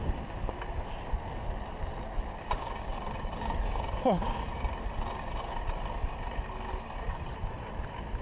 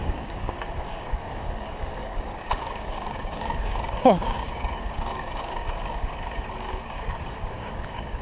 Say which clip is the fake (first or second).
second